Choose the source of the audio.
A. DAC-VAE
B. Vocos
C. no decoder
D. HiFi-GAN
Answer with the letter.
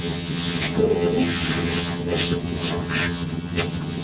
D